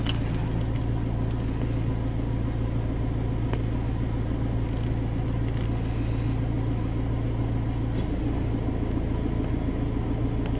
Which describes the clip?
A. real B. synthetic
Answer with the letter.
A